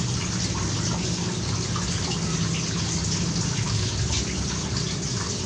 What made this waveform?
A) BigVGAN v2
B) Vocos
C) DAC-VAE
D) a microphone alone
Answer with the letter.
D